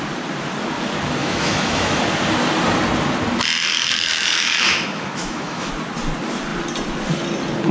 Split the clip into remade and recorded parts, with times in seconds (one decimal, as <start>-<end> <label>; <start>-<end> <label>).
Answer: 0.0-1.2 recorded; 1.2-2.0 remade; 2.0-3.7 recorded; 3.7-5.7 remade; 5.7-7.7 recorded